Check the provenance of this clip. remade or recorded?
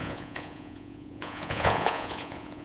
remade